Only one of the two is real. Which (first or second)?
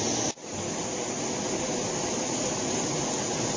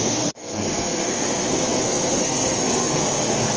first